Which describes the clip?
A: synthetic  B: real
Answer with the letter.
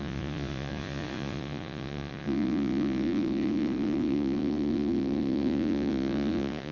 A